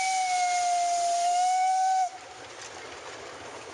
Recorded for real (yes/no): yes